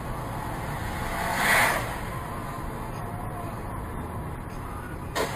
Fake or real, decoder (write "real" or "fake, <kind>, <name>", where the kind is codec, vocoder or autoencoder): real